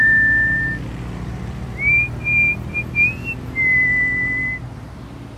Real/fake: real